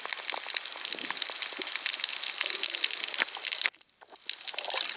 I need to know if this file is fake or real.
real